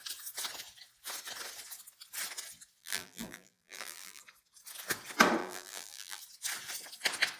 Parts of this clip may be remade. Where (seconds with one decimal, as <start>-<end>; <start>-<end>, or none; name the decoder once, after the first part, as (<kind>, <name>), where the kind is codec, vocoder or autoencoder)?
2.8-4.2 (vocoder, BigVGAN v2); 5.4-6.2